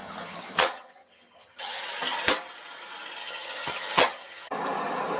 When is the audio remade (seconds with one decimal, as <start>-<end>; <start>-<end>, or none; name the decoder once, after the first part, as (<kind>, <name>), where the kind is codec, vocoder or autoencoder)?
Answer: 0.0-1.8 (vocoder, HiFi-GAN); 3.2-4.5